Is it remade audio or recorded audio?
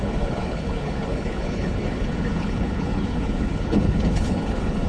remade